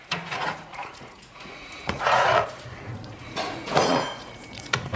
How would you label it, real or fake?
fake